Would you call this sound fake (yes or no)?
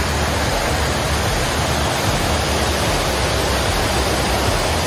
no